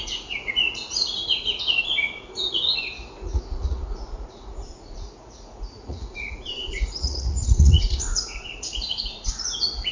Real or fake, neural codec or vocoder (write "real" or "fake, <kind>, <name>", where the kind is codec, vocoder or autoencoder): fake, vocoder, Vocos